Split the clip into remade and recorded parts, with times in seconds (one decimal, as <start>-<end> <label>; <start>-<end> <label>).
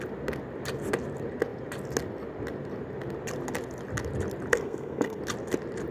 0.0-4.5 recorded; 4.5-5.2 remade; 5.2-5.9 recorded